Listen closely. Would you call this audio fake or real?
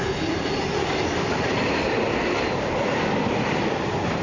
real